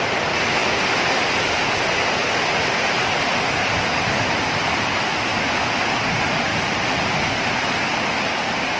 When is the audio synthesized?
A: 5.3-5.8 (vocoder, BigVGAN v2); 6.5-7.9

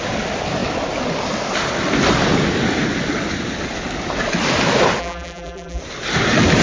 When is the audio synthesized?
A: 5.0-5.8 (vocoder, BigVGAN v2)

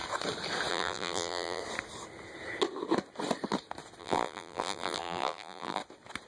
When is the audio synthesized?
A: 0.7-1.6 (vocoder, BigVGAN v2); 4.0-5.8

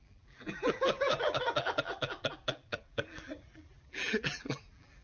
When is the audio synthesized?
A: 0.0-5.0 (vocoder, BigVGAN v2)

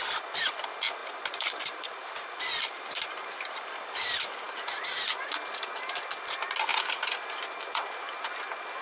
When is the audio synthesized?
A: 1.0-3.7 (vocoder, BigVGAN v2)

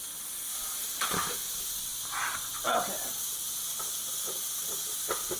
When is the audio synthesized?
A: none